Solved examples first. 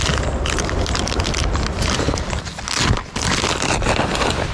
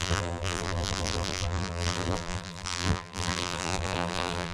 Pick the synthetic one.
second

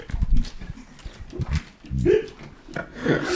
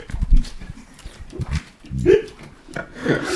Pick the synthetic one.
second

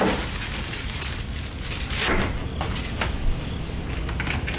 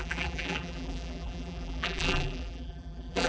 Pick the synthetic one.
second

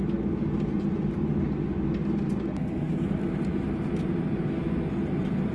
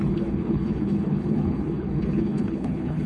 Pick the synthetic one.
second